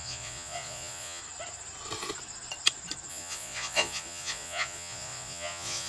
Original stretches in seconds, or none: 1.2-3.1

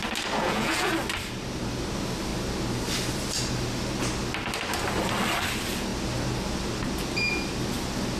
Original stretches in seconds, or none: 0.0-0.4; 0.9-8.2

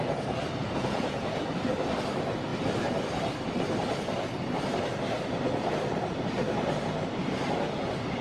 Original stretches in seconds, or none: 0.0-0.6; 1.4-8.2

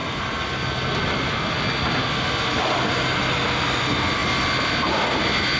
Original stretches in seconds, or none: 0.0-5.6

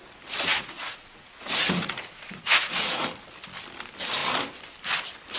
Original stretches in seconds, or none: 0.0-0.5; 3.0-5.4

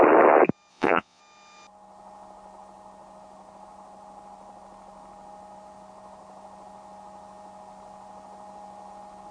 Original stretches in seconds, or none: 0.0-0.7; 1.2-9.3